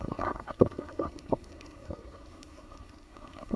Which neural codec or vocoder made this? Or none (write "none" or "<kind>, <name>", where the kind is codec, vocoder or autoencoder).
codec, SNAC